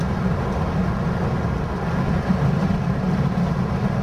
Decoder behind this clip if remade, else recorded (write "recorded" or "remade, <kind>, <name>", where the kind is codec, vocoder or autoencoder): recorded